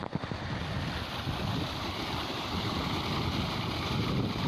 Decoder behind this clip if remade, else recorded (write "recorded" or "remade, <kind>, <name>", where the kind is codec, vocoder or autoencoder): recorded